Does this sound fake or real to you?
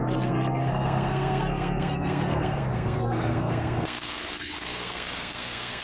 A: fake